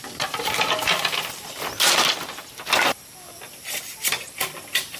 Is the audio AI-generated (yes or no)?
no